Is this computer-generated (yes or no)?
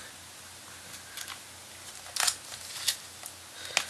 no